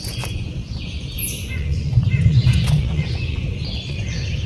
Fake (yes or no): yes